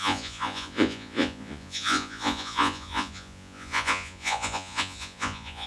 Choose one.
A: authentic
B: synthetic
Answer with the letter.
B